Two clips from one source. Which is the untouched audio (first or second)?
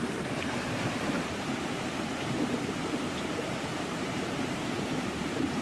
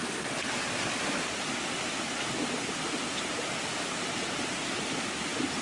second